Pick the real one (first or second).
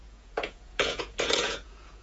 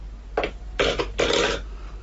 second